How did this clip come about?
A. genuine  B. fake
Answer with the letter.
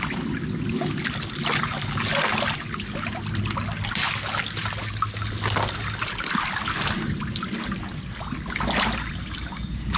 A